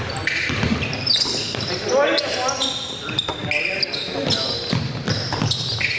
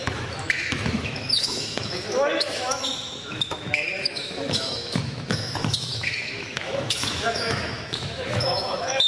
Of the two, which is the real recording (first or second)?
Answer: first